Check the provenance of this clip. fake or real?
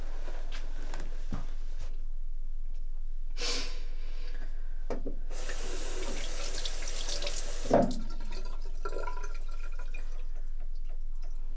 real